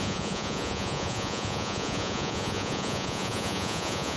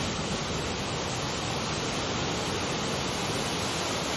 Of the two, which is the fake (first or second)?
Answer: first